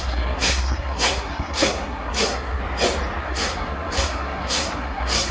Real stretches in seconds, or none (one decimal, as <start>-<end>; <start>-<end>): 2.6-3.2